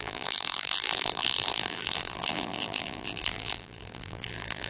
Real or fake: fake